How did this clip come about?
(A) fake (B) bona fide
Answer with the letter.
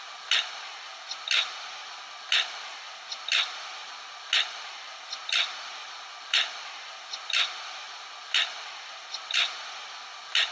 B